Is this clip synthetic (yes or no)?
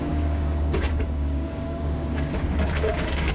yes